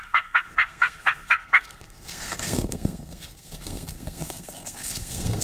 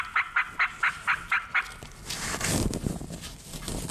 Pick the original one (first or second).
second